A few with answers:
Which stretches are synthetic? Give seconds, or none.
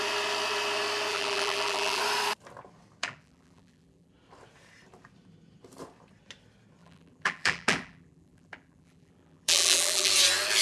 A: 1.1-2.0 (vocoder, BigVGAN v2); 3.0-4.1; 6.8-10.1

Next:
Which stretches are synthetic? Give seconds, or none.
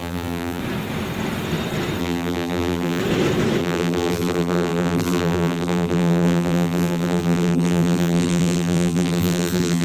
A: 0.0-0.6 (vocoder, BigVGAN v2); 2.0-3.0; 3.6-9.8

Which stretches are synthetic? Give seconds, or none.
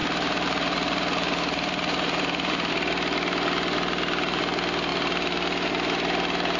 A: 0.0-2.7 (vocoder, BigVGAN v2)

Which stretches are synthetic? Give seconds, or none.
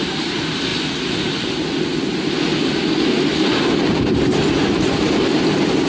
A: 0.0-0.7 (vocoder, BigVGAN v2); 4.2-5.9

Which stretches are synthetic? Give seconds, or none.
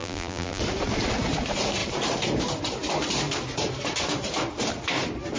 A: 0.0-0.6 (vocoder, BigVGAN v2)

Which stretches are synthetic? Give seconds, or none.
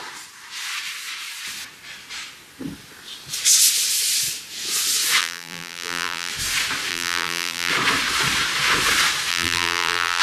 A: 5.2-6.3 (vocoder, BigVGAN v2); 6.9-7.7; 9.3-10.2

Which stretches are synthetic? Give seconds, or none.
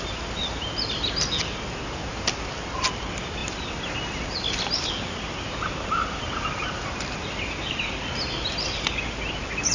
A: 3.4-4.9 (vocoder, BigVGAN v2)